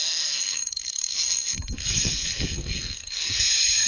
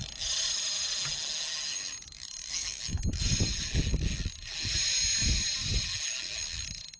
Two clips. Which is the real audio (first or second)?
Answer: second